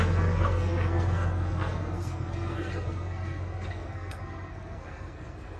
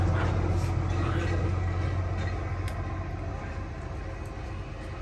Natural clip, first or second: second